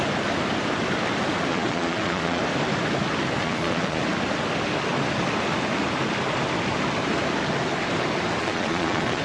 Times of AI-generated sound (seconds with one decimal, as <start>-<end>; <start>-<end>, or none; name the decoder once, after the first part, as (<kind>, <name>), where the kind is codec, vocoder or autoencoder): 1.5-2.4 (vocoder, Vocos); 3.4-4.0; 8.4-9.2